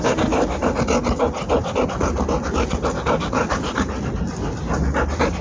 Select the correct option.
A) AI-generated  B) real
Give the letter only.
B